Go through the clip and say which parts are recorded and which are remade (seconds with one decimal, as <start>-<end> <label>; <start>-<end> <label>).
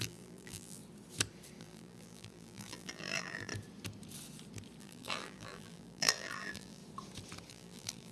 0.0-0.8 remade; 0.8-1.6 recorded; 1.6-3.5 remade; 3.5-4.8 recorded; 4.8-6.8 remade; 6.8-7.5 recorded; 7.5-8.1 remade